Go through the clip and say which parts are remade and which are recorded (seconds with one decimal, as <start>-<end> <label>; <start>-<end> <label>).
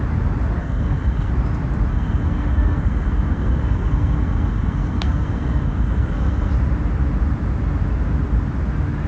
0.0-0.6 recorded; 0.6-1.3 remade; 1.3-1.9 recorded; 1.9-6.5 remade; 6.5-9.1 recorded